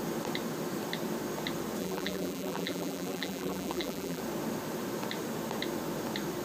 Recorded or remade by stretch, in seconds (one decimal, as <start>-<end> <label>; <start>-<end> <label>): 0.0-1.8 recorded; 1.8-4.2 remade; 4.2-6.4 recorded